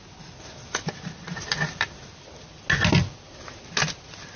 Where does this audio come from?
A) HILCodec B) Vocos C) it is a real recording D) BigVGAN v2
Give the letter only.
C